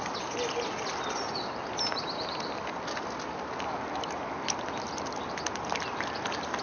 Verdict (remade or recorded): recorded